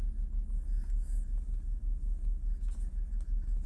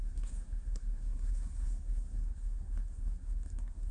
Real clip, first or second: first